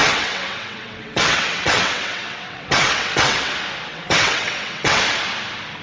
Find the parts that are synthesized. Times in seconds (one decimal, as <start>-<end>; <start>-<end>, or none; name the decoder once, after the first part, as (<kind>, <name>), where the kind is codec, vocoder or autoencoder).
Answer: 0.0-3.5 (vocoder, WaveNeXt); 3.9-5.0